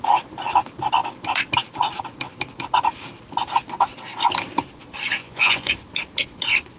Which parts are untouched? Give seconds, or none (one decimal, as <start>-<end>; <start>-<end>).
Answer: 0.0-5.2; 5.7-6.8